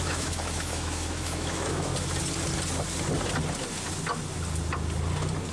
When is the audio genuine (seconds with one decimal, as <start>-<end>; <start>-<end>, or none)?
1.9-5.5